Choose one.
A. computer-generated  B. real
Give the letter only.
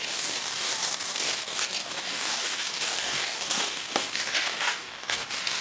A